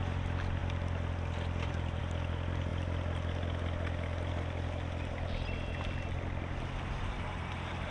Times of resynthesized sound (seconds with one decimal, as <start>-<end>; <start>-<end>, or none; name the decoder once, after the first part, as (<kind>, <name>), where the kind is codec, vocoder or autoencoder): none